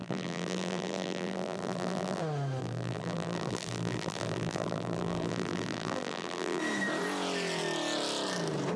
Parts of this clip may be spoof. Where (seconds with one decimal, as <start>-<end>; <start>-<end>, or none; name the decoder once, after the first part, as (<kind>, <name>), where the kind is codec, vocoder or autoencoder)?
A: 0.0-2.2 (vocoder, BigVGAN v2); 2.6-6.6